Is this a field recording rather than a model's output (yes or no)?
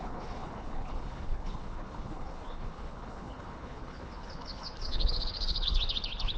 no